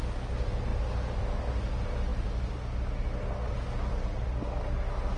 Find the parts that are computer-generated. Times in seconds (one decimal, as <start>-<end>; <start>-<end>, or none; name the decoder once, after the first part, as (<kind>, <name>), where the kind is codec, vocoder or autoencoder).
none

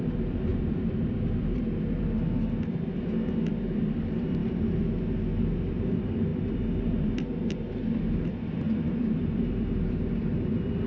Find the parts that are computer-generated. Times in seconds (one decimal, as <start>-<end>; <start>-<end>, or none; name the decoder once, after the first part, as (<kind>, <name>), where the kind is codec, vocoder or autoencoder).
0.0-2.2 (vocoder, BigVGAN v2); 3.5-4.4; 5.7-6.3; 6.8-10.9

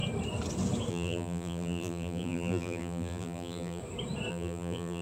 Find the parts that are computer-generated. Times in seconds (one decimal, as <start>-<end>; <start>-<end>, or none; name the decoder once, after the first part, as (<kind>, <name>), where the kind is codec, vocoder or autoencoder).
0.9-3.8 (vocoder, BigVGAN v2); 4.3-5.0

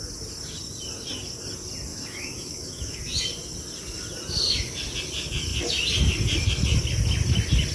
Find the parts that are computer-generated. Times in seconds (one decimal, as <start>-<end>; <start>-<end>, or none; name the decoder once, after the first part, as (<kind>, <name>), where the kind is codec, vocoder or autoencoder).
1.9-3.0 (autoencoder, DAC-VAE)

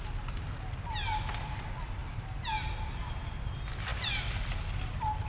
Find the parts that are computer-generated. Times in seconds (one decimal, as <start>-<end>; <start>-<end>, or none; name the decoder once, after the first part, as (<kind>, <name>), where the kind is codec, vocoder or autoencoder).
none

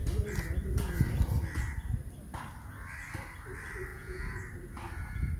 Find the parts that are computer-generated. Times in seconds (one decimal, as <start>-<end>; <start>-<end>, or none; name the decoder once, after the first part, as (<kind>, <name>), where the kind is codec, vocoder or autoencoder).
3.9-4.4 (vocoder, Vocos)